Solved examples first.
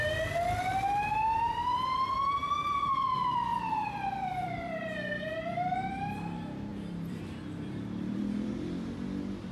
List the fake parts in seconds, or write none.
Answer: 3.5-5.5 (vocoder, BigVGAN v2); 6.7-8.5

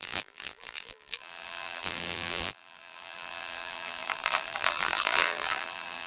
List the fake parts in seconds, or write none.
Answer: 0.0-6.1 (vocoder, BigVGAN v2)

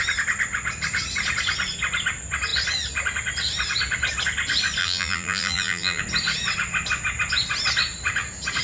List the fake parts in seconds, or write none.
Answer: 4.8-6.0 (vocoder, BigVGAN v2)